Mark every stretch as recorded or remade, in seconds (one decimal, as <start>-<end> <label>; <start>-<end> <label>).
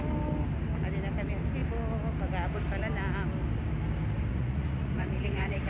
0.0-4.3 recorded; 4.3-5.7 remade